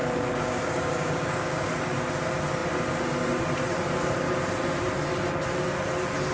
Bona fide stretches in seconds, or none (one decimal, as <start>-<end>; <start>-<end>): 1.7-6.3